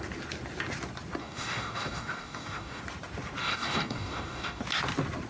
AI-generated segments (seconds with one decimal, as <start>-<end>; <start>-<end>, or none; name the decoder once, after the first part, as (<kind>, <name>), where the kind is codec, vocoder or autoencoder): 1.2-2.8 (codec, DAC); 3.4-4.6

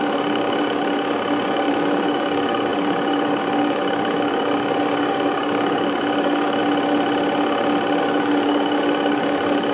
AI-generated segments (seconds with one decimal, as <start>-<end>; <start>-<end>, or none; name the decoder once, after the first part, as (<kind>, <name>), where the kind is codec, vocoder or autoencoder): 0.0-6.6 (codec, DAC); 8.0-9.7

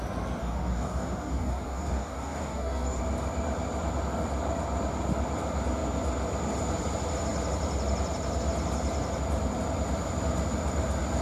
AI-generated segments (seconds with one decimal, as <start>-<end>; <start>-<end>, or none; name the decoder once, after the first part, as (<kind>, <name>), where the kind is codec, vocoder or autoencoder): 0.4-3.0 (codec, DAC)

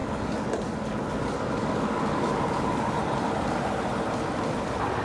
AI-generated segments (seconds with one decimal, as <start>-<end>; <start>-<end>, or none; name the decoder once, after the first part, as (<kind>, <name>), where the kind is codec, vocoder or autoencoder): 0.0-2.9 (codec, DAC)